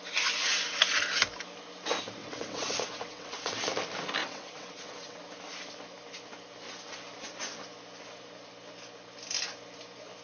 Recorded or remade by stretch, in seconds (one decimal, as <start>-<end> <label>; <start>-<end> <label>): 0.0-2.2 recorded; 2.2-3.6 remade; 3.6-4.2 recorded; 4.2-5.2 remade; 5.2-10.2 recorded